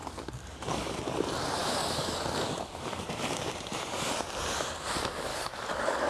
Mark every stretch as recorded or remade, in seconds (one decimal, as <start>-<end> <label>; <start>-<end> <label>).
0.0-1.0 remade; 1.0-1.6 recorded; 1.6-3.5 remade; 3.5-5.3 recorded; 5.3-6.1 remade